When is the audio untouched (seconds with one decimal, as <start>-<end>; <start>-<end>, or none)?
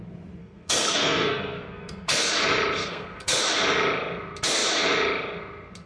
0.0-0.4; 2.3-2.8; 3.4-5.9